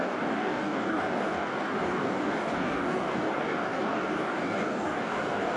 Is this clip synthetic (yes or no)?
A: yes